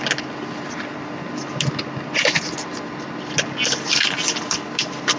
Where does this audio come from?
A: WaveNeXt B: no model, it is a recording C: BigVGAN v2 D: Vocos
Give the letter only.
B